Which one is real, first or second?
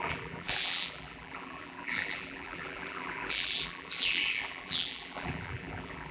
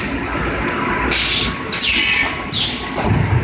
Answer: second